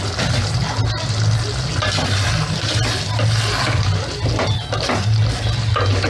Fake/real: real